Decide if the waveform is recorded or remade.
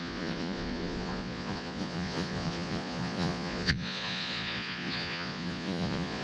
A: remade